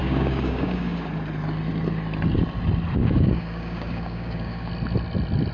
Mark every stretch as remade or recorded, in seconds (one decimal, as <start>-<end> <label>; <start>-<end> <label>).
0.0-1.1 remade; 1.1-3.0 recorded; 3.0-4.7 remade; 4.7-5.5 recorded